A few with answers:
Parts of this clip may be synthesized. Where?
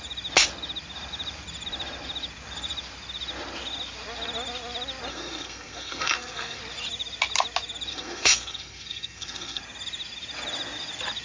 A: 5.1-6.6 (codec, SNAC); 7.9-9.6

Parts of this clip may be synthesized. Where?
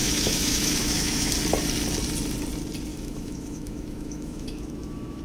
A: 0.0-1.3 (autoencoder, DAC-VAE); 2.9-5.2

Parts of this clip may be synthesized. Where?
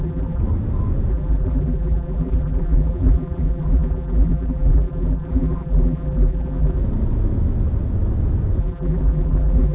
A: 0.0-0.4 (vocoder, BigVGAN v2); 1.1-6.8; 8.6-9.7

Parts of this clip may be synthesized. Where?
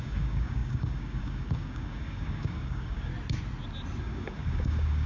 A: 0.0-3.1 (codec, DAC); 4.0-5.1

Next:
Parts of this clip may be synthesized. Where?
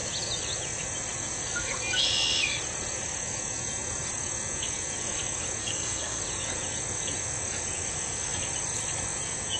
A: 5.6-6.2 (codec, SNAC)